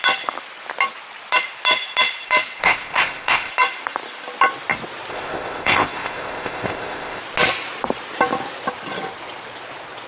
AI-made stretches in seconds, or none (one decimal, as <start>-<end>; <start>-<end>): 2.6-3.5; 5.1-7.2